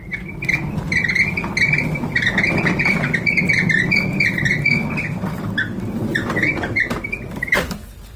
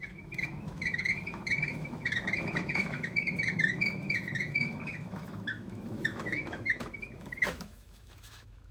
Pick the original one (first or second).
first